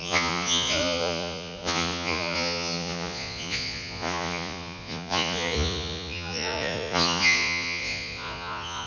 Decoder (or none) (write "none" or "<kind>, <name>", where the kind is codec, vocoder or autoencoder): vocoder, Vocos